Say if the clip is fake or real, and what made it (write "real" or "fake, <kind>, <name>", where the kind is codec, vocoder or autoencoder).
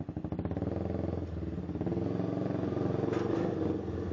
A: real